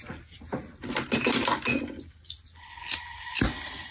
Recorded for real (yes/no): yes